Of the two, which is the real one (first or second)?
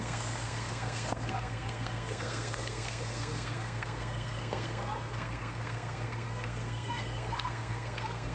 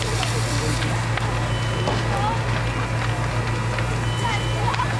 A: second